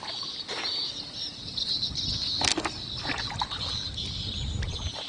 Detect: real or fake real